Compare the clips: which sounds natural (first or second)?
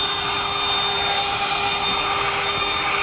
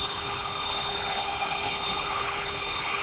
first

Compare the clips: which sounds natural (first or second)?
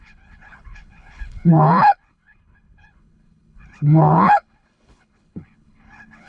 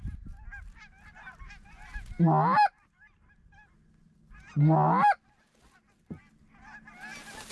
second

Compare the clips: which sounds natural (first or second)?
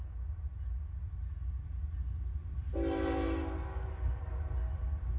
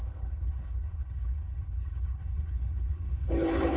first